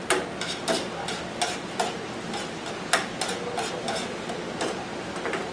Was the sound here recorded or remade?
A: recorded